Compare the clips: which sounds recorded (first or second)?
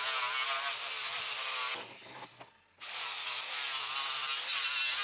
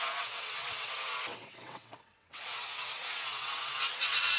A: first